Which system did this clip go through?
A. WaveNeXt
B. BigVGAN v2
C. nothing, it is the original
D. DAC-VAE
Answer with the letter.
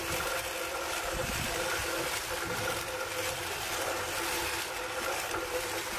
C